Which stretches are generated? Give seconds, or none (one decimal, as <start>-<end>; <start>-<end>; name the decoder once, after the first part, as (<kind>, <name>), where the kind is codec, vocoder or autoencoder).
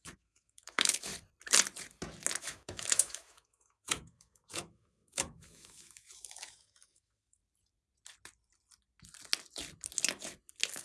0.0-1.1 (autoencoder, DAC-VAE); 2.4-7.4